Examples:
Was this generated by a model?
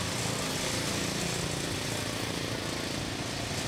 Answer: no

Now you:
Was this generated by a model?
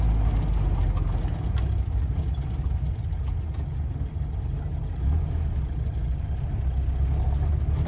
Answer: no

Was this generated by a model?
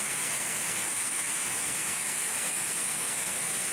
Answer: yes